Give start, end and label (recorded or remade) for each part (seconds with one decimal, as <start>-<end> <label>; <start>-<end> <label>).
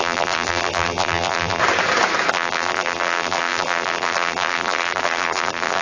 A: 0.0-1.6 remade; 1.6-2.3 recorded; 2.3-5.8 remade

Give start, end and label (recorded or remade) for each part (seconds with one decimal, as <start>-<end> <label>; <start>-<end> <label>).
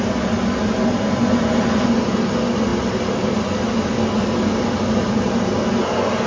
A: 0.0-6.3 recorded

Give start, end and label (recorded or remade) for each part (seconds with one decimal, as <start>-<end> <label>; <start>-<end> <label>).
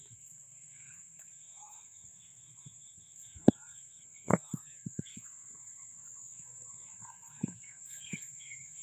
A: 0.0-8.8 remade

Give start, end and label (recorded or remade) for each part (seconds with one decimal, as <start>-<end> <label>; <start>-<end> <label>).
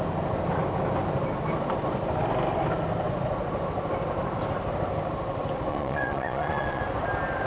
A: 0.0-5.7 recorded; 5.7-6.8 remade; 6.8-7.5 recorded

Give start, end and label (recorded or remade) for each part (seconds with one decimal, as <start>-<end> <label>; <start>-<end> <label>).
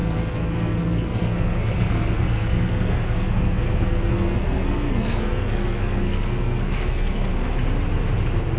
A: 0.0-7.3 remade; 7.3-8.6 recorded